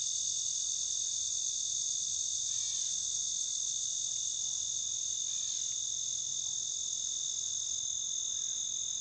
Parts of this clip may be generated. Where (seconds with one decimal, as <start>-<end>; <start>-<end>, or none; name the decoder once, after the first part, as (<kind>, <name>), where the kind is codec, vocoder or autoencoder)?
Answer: 6.3-7.3 (vocoder, BigVGAN v2)